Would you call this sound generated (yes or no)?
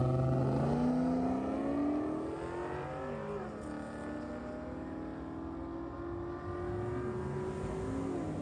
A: no